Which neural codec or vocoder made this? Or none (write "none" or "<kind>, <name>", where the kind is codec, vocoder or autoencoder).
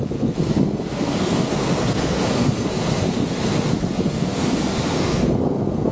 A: codec, SNAC